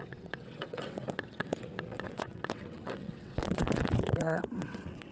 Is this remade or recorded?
remade